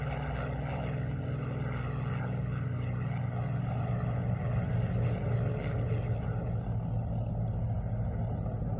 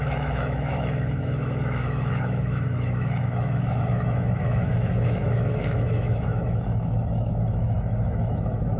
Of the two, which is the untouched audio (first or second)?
first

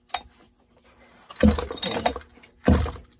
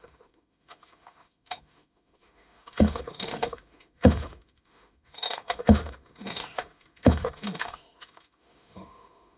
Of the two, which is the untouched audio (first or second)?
first